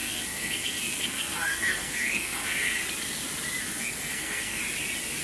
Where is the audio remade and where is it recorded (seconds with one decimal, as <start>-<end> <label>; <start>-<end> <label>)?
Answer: 0.0-2.8 remade; 2.8-3.6 recorded; 3.6-4.6 remade; 4.6-5.2 recorded